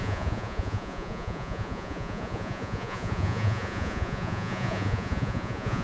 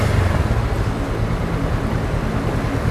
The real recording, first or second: second